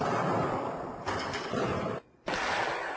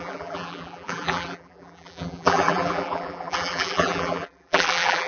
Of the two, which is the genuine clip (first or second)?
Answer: first